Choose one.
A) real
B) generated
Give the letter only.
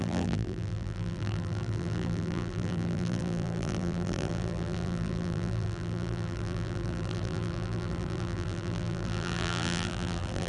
B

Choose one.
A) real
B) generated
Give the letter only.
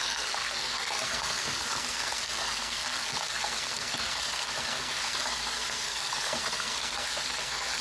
B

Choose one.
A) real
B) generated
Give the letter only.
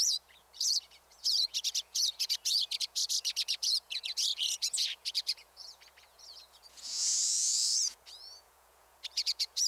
B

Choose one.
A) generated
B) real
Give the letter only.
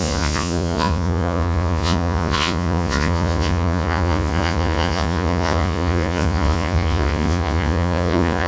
A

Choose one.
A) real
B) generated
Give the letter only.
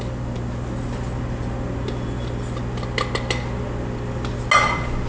A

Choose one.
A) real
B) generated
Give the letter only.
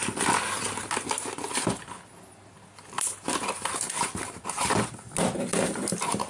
A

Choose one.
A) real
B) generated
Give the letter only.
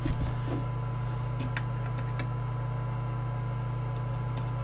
A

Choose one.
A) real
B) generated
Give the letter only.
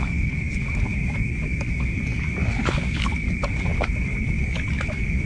B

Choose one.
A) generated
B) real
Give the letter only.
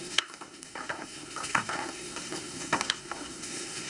A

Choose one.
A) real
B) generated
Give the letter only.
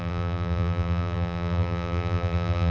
B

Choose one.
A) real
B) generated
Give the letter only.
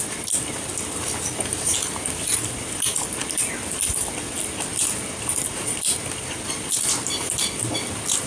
A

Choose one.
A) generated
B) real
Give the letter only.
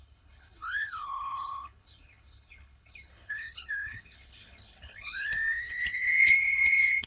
A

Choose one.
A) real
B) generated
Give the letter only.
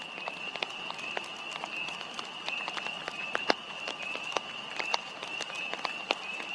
A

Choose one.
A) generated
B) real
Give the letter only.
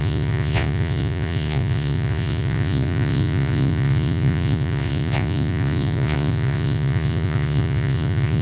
A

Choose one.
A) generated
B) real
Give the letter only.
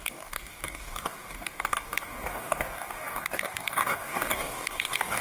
A